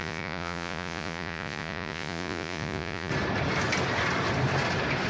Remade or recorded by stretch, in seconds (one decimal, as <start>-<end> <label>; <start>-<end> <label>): 0.0-3.1 remade; 3.1-5.1 recorded